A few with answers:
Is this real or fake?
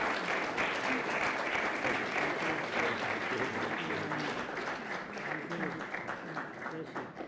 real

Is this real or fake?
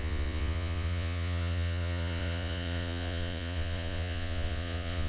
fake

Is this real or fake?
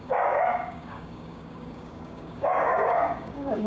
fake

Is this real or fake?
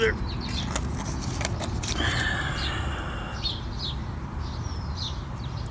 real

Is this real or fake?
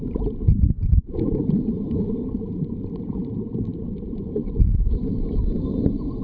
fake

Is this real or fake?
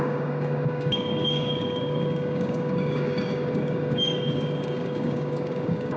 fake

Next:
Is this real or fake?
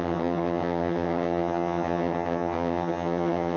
fake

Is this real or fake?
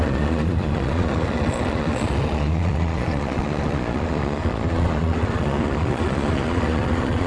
fake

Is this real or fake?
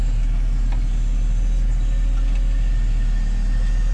real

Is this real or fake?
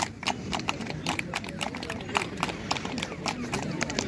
fake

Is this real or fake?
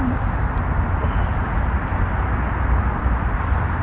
real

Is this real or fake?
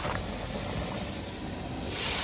real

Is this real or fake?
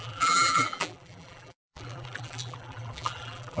fake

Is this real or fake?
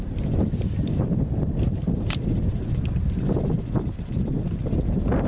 real